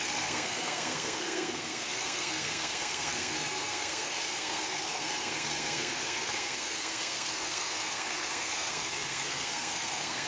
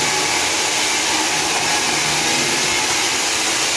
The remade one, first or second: first